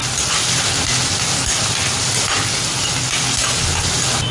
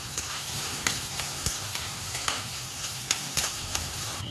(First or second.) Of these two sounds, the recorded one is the first